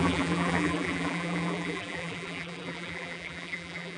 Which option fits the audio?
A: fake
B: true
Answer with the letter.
A